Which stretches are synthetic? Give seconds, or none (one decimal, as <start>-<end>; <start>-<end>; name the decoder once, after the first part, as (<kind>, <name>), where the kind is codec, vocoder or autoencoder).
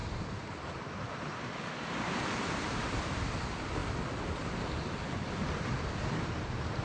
0.0-3.2 (vocoder, BigVGAN v2)